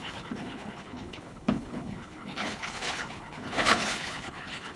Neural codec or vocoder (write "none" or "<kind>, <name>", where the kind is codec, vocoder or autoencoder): codec, HILCodec